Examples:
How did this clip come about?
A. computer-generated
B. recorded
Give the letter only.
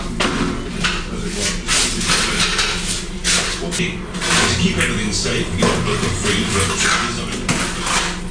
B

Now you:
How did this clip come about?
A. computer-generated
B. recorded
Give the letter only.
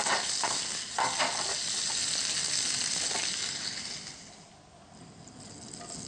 B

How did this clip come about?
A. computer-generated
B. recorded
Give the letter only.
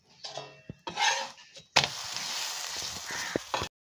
B